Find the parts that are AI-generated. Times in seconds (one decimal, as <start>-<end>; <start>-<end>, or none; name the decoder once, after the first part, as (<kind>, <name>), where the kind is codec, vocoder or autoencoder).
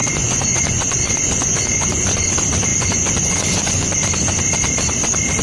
0.0-2.3 (vocoder, Vocos); 2.7-4.0